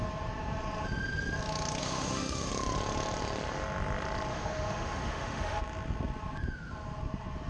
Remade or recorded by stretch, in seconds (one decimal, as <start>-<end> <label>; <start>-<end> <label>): 0.0-1.8 recorded; 1.8-2.5 remade; 2.5-4.3 recorded; 4.3-5.6 remade; 5.6-7.5 recorded